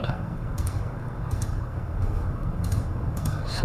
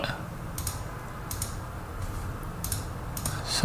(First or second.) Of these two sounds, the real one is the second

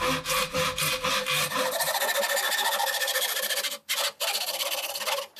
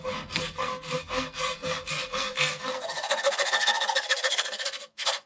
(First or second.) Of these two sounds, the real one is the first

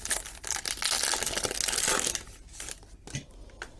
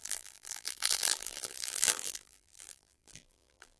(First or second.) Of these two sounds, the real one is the first